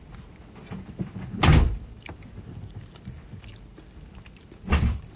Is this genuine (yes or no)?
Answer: yes